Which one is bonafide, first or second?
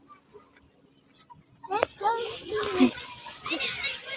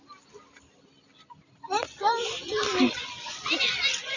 first